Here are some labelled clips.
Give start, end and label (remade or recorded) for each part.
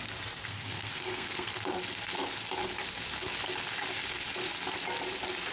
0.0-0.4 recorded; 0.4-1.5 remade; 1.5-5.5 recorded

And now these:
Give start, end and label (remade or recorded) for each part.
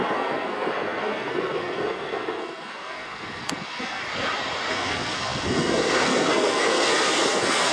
0.0-4.0 remade; 4.0-4.7 recorded; 4.7-7.7 remade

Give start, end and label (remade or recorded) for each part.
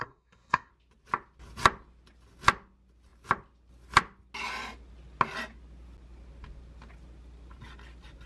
0.0-0.7 remade; 0.7-8.3 recorded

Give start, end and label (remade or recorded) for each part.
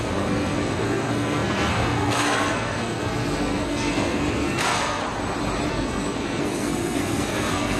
0.0-5.0 remade; 5.0-5.7 recorded; 5.7-7.8 remade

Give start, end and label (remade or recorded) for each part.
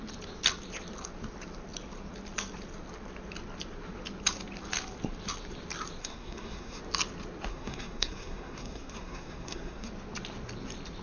0.0-6.0 recorded; 6.0-6.8 remade; 6.8-7.5 recorded; 7.5-9.9 remade; 9.9-11.0 recorded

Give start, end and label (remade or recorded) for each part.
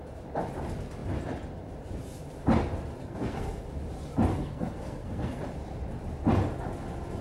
0.0-3.0 recorded; 3.0-3.6 remade; 3.6-4.3 recorded; 4.3-5.4 remade; 5.4-7.2 recorded